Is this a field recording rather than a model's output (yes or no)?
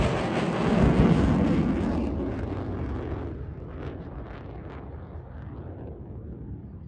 yes